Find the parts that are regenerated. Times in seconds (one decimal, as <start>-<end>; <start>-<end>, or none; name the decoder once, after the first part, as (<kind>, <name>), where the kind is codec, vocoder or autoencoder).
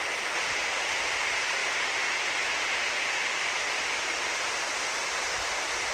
none